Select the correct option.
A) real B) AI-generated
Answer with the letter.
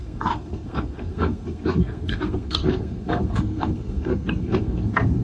B